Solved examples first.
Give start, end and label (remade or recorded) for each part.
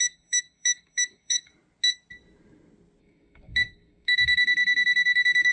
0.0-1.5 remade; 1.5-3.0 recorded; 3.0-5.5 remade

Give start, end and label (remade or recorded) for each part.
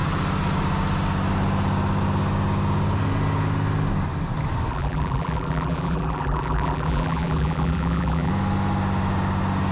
0.0-4.7 recorded; 4.7-8.3 remade; 8.3-9.7 recorded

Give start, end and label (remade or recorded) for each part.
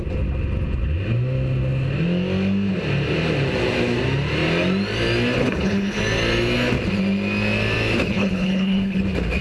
0.0-5.4 recorded; 5.4-6.0 remade; 6.0-8.1 recorded; 8.1-9.0 remade; 9.0-9.4 recorded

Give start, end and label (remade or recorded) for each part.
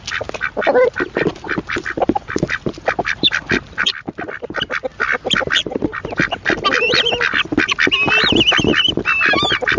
0.0-1.3 recorded; 1.3-3.8 remade; 3.8-4.9 recorded; 4.9-5.8 remade; 5.8-9.8 recorded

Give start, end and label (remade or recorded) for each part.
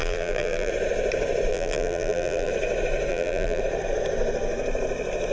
0.0-0.7 remade; 0.7-1.5 recorded; 1.5-2.5 remade; 2.5-3.1 recorded; 3.1-3.6 remade; 3.6-5.3 recorded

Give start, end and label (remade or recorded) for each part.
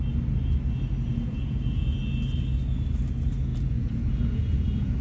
0.0-1.1 recorded; 1.1-2.0 remade; 2.0-3.5 recorded; 3.5-5.0 remade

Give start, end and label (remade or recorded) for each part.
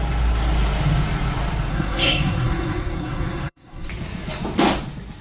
0.0-1.7 recorded; 1.7-3.9 remade; 3.9-5.2 recorded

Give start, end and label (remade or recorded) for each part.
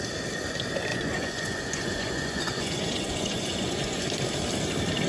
0.0-0.9 recorded; 0.9-4.0 remade; 4.0-5.1 recorded